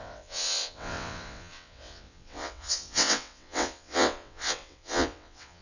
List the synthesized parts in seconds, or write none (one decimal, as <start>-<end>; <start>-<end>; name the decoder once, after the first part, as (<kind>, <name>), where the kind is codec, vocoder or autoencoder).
0.0-5.6 (vocoder, WaveNeXt)